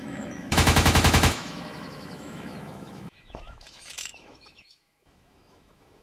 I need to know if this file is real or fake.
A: fake